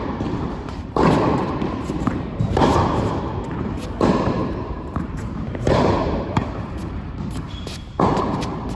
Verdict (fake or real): fake